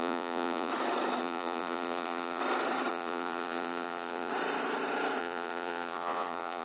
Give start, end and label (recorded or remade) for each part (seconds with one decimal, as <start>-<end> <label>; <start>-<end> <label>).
0.0-0.7 remade; 0.7-1.2 recorded; 1.2-2.4 remade; 2.4-2.9 recorded; 2.9-4.3 remade; 4.3-5.2 recorded; 5.2-6.6 remade